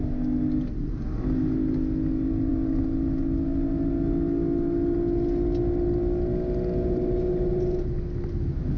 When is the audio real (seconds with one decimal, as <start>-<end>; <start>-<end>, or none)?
0.0-8.8